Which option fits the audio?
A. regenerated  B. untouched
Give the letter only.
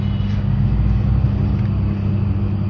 B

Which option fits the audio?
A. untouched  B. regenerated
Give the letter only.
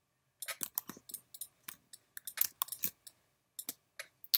A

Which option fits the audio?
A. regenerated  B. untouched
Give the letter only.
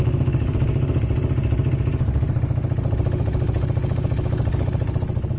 B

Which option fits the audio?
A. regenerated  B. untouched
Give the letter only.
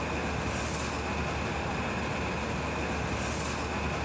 B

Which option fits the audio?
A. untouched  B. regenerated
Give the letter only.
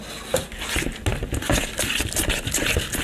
A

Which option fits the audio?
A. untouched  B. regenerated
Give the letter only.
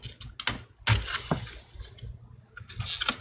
A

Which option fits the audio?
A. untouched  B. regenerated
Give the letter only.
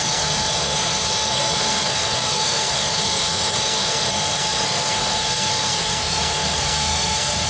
B